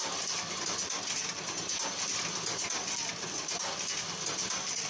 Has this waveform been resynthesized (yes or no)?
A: no